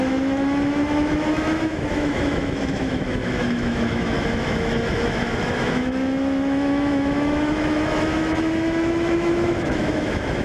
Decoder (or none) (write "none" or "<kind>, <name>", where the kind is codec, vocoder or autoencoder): autoencoder, DAC-VAE